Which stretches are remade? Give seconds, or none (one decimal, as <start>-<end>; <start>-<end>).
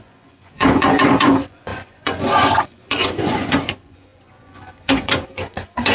0.0-5.9